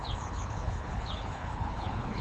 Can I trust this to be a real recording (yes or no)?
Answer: no